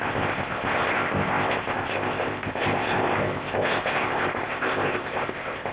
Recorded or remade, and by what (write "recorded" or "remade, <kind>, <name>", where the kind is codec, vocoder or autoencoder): remade, codec, ZipCodec